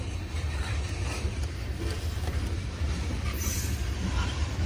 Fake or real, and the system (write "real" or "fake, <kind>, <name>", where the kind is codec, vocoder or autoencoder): fake, vocoder, BigVGAN v2